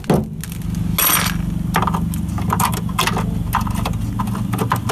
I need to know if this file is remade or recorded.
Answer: recorded